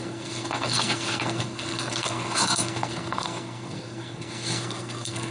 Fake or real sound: fake